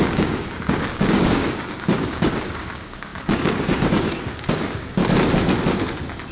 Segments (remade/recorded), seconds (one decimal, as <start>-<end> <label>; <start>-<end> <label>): 0.0-5.0 remade; 5.0-6.3 recorded